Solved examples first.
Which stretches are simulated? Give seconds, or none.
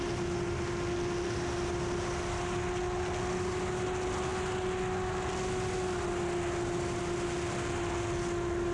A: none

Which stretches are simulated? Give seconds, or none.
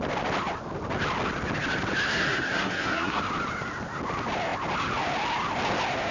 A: 2.1-3.2 (codec, SNAC)